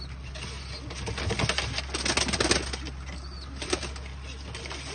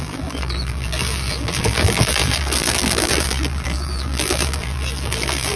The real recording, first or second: first